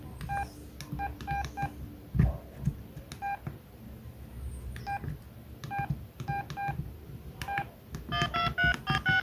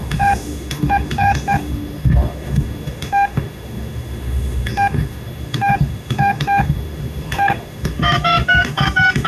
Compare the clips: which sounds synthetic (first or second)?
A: second